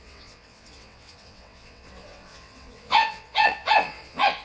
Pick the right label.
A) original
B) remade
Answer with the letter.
B